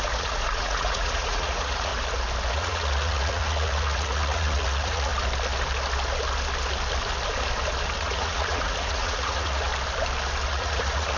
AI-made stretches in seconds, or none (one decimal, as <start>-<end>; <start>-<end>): 0.0-1.9; 2.5-5.1; 8.0-9.7; 10.5-11.2

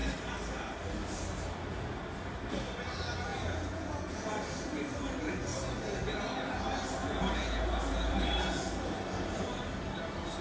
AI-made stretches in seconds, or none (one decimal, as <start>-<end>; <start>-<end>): 3.3-4.2; 7.0-8.7

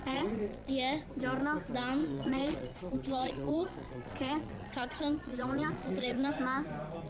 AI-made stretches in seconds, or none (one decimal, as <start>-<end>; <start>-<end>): 0.0-0.7; 2.0-6.3

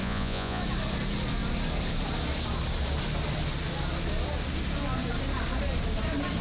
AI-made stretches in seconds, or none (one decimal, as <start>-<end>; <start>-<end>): 0.0-0.6

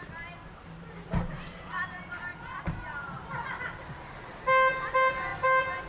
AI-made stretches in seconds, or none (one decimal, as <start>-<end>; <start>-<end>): none